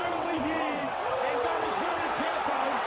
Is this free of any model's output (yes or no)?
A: no